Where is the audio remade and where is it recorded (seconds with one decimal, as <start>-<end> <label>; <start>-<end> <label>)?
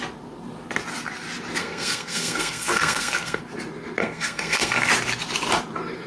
0.0-1.6 recorded; 1.6-3.4 remade; 3.4-4.0 recorded; 4.0-4.9 remade; 4.9-6.1 recorded